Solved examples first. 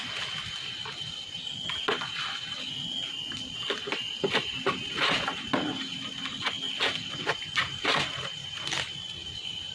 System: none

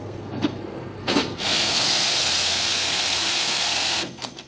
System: codec, SNAC